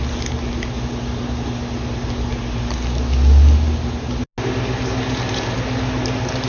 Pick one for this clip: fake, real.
real